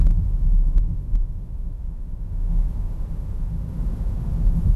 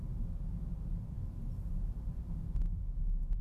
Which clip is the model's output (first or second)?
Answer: first